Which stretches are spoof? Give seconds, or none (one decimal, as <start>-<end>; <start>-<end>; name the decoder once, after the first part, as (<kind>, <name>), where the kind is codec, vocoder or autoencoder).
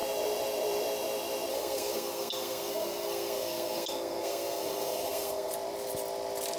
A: 1.5-5.5 (codec, SNAC)